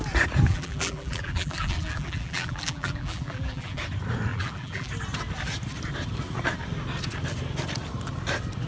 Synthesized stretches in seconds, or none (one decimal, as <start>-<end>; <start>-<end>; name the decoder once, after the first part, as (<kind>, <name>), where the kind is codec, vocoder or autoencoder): 0.5-3.8 (vocoder, BigVGAN v2); 4.3-4.9